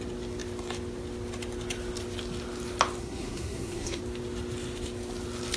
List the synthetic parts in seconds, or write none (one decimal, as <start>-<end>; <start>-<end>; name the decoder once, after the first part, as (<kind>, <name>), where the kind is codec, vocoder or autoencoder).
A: 3.0-4.0 (codec, SNAC)